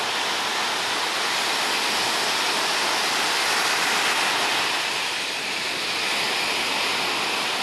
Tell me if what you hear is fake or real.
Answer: real